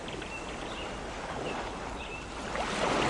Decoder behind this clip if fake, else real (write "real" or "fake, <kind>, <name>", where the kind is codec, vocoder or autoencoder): fake, vocoder, BigVGAN v2